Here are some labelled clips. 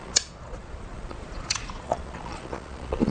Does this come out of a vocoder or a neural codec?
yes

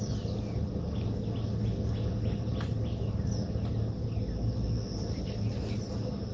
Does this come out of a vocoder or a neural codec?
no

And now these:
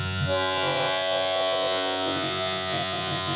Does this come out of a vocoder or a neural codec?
yes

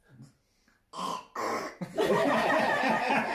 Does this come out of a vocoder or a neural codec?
no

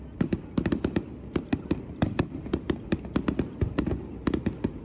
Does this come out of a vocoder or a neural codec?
no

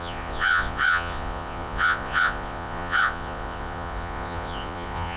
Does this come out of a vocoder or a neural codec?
yes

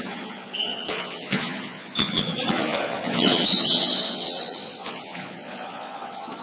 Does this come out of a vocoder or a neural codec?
yes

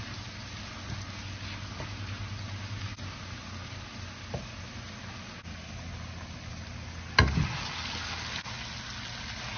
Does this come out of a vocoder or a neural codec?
no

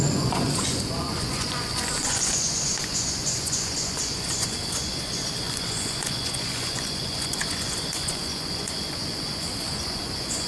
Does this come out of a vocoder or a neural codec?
yes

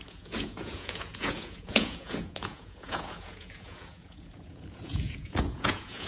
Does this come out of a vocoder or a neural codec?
yes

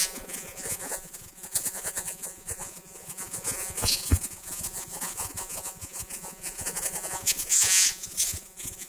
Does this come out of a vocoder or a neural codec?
yes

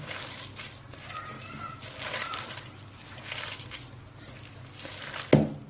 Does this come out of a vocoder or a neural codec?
no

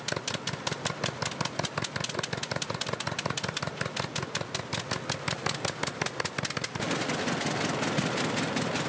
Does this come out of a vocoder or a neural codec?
no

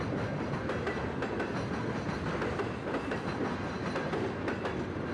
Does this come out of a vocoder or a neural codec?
no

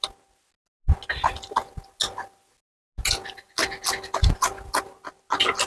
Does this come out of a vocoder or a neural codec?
no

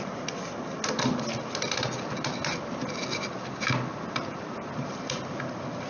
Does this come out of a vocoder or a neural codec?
no